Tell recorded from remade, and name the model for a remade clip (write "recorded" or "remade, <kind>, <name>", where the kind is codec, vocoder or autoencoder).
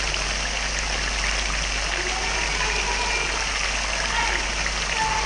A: recorded